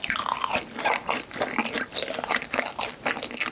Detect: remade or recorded recorded